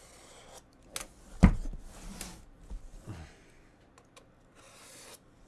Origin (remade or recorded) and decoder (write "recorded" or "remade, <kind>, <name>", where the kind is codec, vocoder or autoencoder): recorded